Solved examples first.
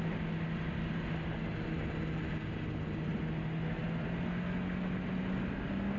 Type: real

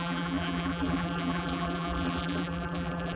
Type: fake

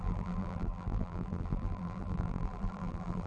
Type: fake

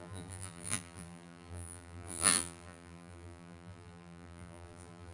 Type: fake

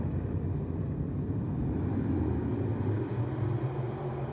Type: fake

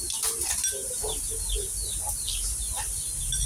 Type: real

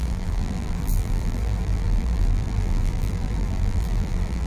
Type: fake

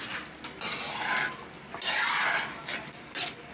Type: fake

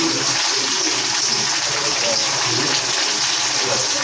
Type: real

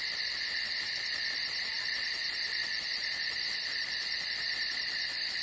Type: fake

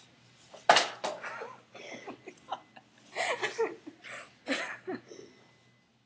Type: real